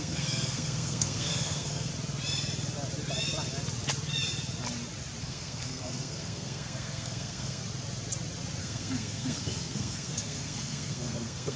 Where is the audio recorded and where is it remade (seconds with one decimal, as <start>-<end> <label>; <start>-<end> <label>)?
0.0-1.9 remade; 1.9-5.2 recorded; 5.2-7.6 remade; 7.6-8.6 recorded; 8.6-11.6 remade